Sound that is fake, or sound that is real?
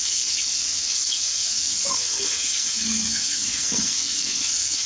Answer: fake